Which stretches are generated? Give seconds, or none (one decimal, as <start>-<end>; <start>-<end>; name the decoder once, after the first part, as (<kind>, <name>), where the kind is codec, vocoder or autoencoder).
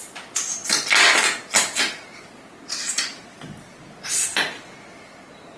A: none